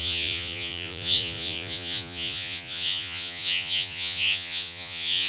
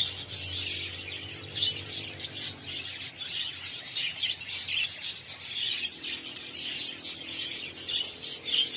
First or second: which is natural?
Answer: second